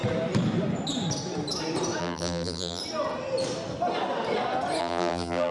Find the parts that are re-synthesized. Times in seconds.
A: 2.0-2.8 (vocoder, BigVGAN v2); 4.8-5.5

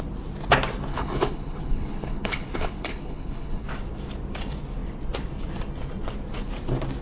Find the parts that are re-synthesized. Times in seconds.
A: 0.9-3.7 (codec, HILCodec)

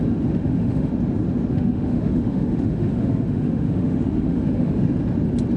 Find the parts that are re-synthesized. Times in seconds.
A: 0.4-0.9 (autoencoder, DAC-VAE); 1.5-4.9